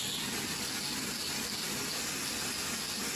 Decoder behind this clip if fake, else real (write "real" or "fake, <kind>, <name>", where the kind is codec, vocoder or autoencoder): real